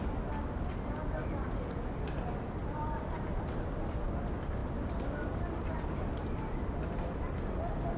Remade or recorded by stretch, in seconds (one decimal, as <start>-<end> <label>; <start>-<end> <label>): 0.0-2.6 recorded; 2.6-3.1 remade; 3.1-8.0 recorded